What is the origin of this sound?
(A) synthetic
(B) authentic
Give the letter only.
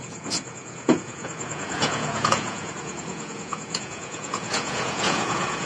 A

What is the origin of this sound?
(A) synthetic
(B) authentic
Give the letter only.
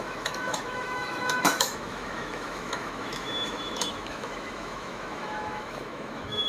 A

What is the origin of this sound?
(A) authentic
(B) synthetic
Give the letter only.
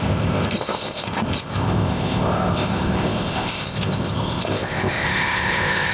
B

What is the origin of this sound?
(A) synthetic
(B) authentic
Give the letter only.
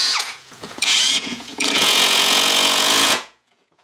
A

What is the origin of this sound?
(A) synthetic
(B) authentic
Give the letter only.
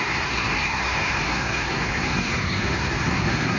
A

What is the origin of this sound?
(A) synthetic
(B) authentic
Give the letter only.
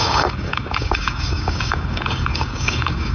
A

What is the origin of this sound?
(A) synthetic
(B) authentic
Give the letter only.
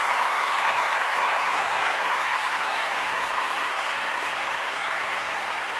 A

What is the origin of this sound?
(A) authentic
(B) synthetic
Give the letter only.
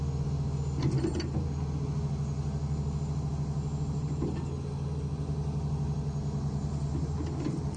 A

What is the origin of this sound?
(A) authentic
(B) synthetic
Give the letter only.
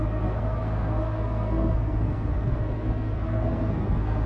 B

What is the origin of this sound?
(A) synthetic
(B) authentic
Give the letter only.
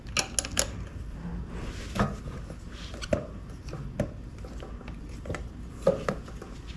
B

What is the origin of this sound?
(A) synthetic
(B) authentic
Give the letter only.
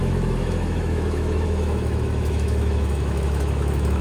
A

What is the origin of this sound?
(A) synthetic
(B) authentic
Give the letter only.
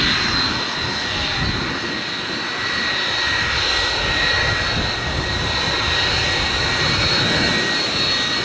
B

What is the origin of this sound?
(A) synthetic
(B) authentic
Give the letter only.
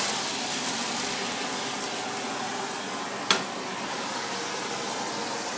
B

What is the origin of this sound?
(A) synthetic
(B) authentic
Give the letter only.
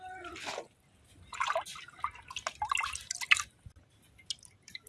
B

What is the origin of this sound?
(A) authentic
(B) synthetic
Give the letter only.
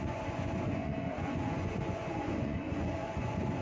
B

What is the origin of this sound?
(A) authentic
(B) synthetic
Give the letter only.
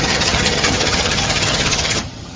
B